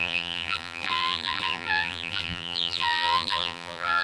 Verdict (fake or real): fake